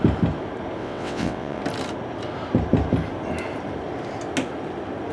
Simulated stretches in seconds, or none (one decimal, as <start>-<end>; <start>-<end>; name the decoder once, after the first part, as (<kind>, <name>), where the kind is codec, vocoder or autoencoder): 0.8-1.6 (vocoder, WaveNeXt)